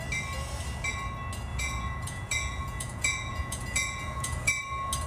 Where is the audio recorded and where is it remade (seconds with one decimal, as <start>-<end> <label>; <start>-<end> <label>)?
0.0-1.5 recorded; 1.5-4.6 remade; 4.6-5.1 recorded